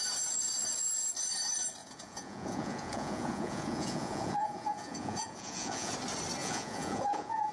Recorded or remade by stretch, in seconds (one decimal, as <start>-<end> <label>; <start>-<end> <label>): 0.0-1.8 recorded; 1.8-5.9 remade; 5.9-6.4 recorded; 6.4-7.5 remade